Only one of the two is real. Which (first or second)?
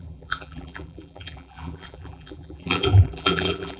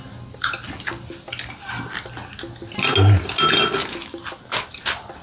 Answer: second